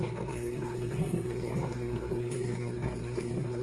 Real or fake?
fake